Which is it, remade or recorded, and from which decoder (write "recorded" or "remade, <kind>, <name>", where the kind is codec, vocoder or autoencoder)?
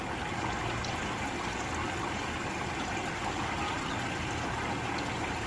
recorded